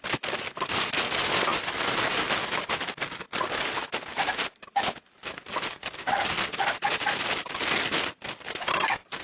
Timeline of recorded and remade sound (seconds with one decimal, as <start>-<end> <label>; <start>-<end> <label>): 0.0-9.2 recorded